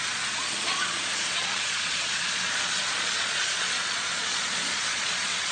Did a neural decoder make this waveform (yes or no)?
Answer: yes